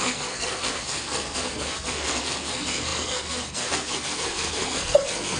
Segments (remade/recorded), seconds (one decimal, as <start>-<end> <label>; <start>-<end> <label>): 0.0-5.4 remade